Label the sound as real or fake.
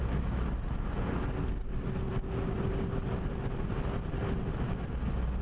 real